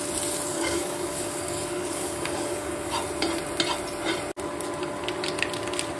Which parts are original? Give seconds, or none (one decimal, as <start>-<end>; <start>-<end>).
0.0-0.5; 2.9-6.0